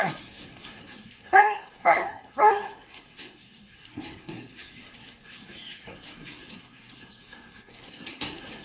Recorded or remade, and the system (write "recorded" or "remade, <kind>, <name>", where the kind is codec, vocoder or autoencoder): remade, codec, SNAC